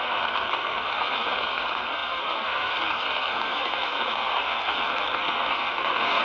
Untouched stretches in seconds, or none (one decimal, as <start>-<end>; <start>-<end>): none